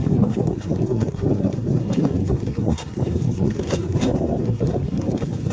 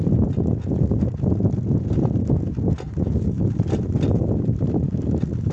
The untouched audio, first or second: second